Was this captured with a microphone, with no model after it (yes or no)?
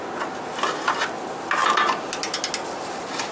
yes